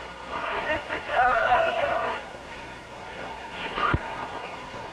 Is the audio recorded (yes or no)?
no